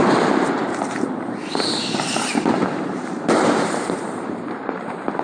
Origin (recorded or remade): remade